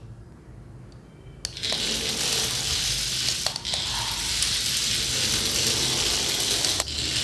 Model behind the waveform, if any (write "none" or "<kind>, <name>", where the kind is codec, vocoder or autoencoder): none